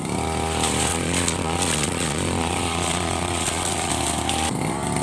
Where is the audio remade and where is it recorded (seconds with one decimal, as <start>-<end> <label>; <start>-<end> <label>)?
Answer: 0.0-0.9 recorded; 0.9-3.9 remade; 3.9-5.0 recorded